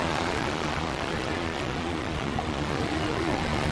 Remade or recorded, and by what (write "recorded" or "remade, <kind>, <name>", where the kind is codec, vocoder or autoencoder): remade, vocoder, Vocos